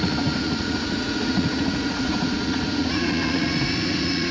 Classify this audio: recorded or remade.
remade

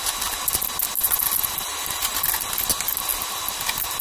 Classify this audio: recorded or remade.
recorded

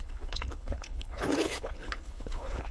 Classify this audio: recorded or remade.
remade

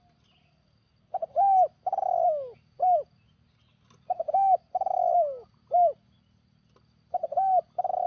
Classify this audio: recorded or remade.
recorded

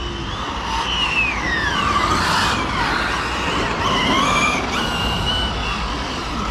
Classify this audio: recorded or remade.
recorded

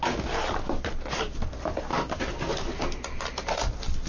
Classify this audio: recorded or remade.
recorded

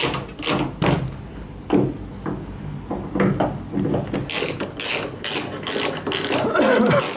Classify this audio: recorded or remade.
recorded